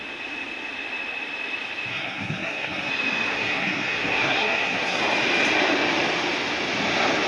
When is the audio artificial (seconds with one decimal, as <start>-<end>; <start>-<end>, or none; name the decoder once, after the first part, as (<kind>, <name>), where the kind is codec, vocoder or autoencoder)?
1.9-2.9 (codec, SNAC); 3.3-5.0